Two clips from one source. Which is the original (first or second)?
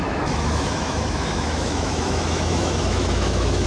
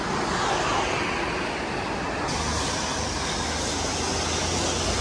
second